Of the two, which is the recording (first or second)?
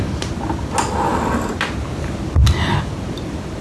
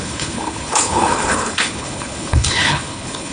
first